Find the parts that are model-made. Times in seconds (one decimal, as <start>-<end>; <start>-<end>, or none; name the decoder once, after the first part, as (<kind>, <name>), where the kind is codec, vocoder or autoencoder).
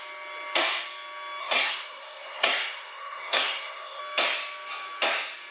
1.4-4.0 (codec, SNAC)